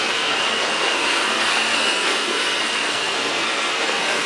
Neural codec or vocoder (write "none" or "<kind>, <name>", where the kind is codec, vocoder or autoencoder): codec, SNAC